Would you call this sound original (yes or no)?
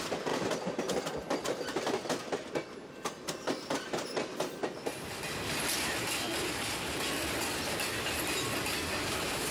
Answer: yes